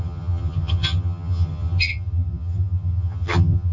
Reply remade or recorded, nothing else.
remade